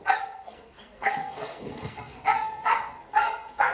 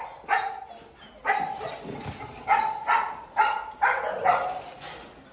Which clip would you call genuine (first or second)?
second